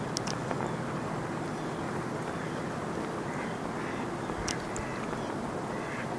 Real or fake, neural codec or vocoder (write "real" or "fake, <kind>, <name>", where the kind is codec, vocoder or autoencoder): real